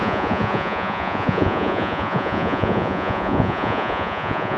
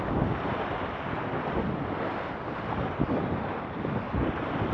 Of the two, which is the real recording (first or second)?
second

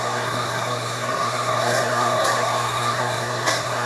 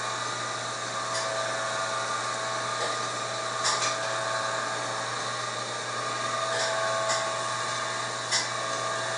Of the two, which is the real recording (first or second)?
second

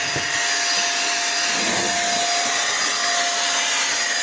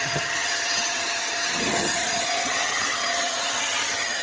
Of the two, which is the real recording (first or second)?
first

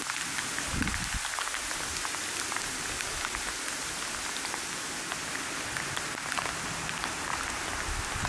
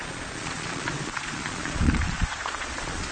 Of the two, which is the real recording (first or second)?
first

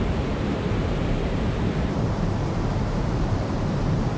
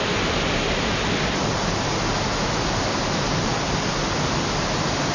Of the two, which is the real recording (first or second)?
second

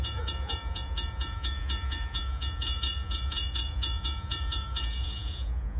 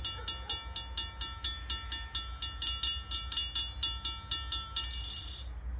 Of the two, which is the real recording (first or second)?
second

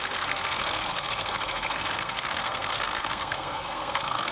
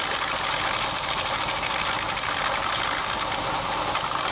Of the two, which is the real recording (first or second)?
second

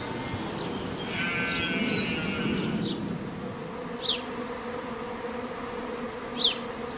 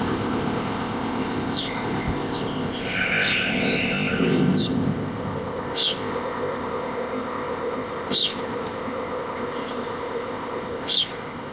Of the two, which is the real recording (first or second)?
first